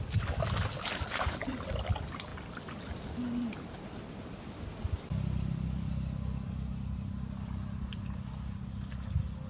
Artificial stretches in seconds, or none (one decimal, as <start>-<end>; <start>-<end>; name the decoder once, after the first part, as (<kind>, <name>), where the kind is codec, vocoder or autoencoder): none